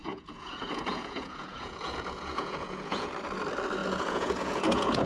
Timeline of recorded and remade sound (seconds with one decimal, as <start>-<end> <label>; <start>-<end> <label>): 0.0-3.1 remade; 3.1-3.8 recorded; 3.8-5.1 remade